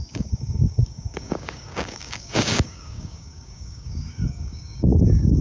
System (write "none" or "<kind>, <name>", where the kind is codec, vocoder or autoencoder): codec, DAC